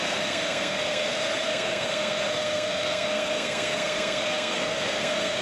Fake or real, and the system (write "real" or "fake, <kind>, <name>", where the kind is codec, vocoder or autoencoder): fake, codec, SNAC